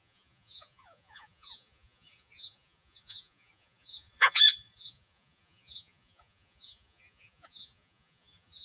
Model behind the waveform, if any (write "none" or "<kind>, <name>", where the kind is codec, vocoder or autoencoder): vocoder, Vocos